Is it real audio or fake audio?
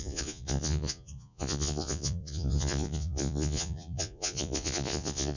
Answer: fake